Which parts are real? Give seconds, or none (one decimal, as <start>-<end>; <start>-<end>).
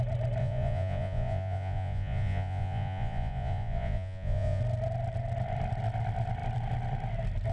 0.0-0.4; 4.6-7.5